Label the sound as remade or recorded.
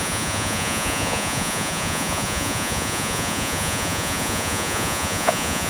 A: remade